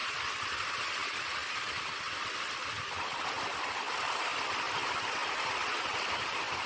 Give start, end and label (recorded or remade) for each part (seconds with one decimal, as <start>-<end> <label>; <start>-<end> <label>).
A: 0.0-6.7 recorded